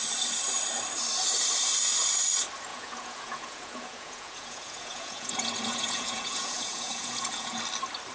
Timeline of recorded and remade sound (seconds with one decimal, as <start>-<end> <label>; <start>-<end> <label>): 0.0-2.7 recorded; 2.7-7.6 remade; 7.6-8.1 recorded